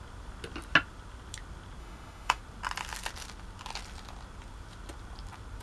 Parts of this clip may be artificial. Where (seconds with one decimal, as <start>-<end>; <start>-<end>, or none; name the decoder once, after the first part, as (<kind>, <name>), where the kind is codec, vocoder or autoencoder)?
1.8-2.4 (autoencoder, DAC-VAE)